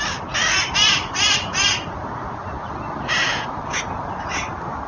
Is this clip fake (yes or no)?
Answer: no